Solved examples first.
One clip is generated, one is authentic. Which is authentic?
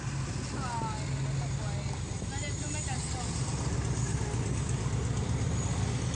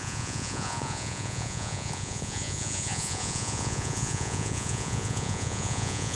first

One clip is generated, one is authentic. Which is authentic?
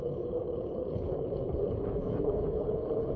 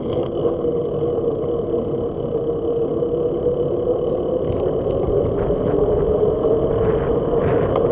second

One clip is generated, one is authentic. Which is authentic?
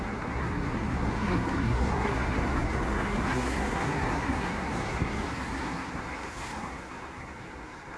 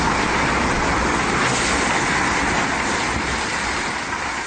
second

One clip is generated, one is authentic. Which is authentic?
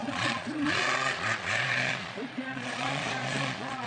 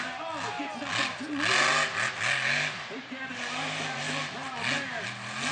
second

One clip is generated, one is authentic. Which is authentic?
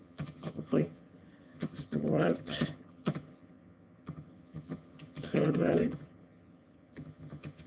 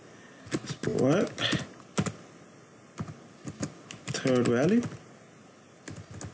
second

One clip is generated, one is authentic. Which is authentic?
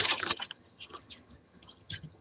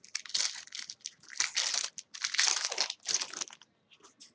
second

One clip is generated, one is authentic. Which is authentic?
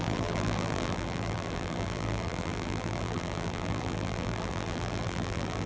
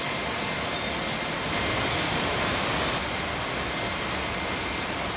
second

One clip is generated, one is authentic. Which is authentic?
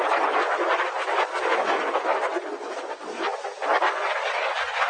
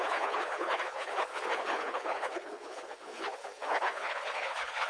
first